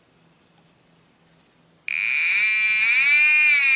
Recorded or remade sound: recorded